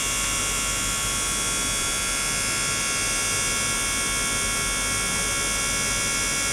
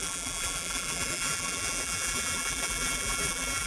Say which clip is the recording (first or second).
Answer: first